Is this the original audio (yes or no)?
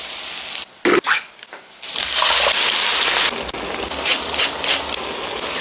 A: yes